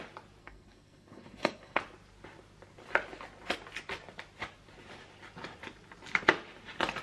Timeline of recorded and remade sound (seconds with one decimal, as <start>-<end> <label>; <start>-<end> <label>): 0.0-0.4 recorded; 0.4-1.8 remade; 1.8-7.0 recorded